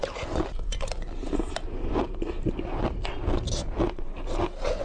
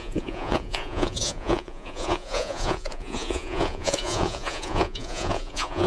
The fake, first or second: second